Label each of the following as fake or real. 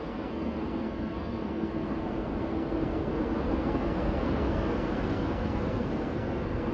fake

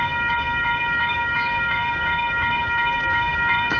fake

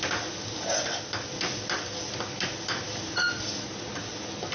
real